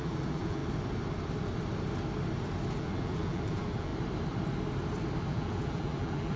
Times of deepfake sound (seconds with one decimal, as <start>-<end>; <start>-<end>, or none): 0.0-0.6; 2.7-3.9; 5.3-6.4